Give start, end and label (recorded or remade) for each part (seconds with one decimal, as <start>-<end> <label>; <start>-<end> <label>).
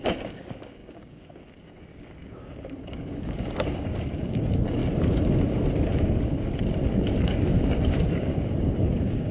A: 0.0-4.8 remade; 4.8-6.9 recorded; 6.9-9.3 remade